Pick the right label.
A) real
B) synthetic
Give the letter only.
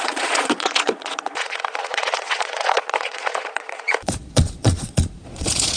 B